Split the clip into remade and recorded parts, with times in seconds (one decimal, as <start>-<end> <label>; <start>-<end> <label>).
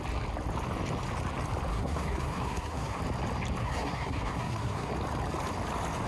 0.0-1.7 recorded; 1.7-3.0 remade; 3.0-3.6 recorded; 3.6-4.9 remade; 4.9-6.1 recorded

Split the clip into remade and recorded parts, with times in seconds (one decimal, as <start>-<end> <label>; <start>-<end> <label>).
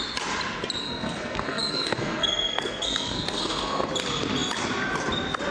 0.0-0.8 recorded; 0.8-3.9 remade; 3.9-5.5 recorded